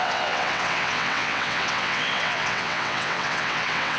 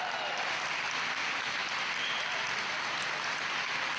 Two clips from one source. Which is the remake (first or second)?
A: first